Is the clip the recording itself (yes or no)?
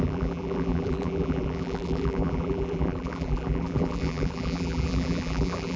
no